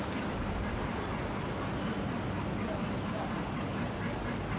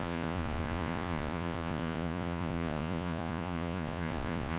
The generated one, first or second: second